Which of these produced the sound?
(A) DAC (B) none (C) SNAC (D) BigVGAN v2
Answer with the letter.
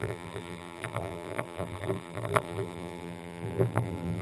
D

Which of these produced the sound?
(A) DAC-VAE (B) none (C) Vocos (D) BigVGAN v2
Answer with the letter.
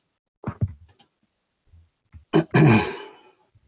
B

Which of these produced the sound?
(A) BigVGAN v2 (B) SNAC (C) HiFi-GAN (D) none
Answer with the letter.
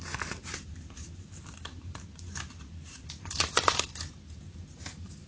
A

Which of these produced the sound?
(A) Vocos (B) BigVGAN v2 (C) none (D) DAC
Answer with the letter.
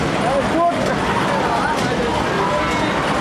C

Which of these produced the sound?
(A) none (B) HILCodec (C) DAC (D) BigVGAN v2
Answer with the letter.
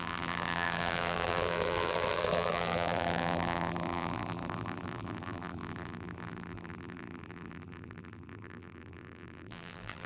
D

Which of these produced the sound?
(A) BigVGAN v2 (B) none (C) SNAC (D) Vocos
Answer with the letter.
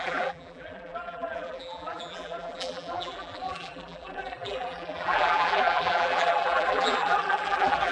A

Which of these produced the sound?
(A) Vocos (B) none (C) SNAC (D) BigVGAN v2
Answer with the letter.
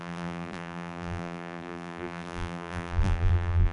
D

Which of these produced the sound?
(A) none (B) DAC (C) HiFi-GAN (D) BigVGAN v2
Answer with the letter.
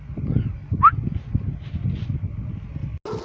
A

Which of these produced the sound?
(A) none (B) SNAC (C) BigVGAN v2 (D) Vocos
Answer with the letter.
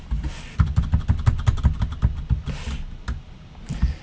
A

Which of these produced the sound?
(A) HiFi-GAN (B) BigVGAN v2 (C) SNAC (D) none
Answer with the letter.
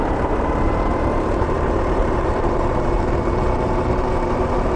B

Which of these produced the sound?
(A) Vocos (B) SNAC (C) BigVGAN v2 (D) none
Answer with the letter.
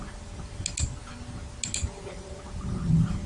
D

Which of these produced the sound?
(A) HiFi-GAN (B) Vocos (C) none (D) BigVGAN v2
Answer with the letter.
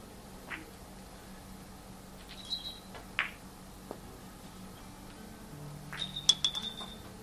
C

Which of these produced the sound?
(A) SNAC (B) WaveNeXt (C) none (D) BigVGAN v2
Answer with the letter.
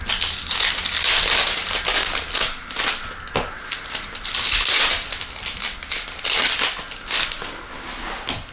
C